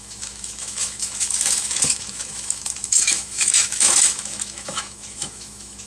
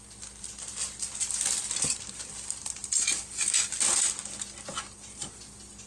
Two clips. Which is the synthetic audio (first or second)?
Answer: first